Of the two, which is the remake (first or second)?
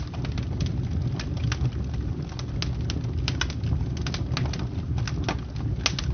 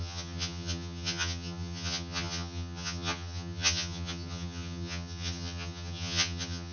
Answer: second